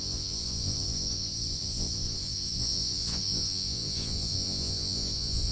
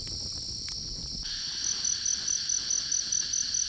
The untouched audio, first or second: second